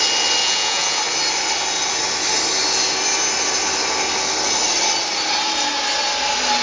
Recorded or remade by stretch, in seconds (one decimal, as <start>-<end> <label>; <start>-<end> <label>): 0.0-0.4 recorded; 0.4-1.0 remade; 1.0-6.6 recorded

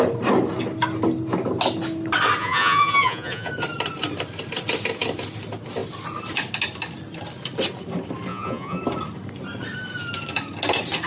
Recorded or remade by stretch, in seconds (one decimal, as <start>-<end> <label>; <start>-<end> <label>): 0.0-2.4 recorded; 2.4-3.5 remade; 3.5-8.3 recorded; 8.3-8.8 remade; 8.8-11.1 recorded

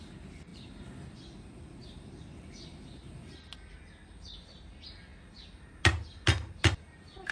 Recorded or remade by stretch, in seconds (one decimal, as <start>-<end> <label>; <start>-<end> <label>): 0.0-7.3 recorded

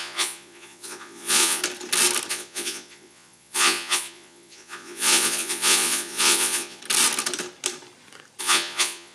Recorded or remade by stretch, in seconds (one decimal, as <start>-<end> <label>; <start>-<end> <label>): 0.0-1.6 remade; 1.6-2.3 recorded; 2.3-6.8 remade; 6.8-8.4 recorded; 8.4-9.1 remade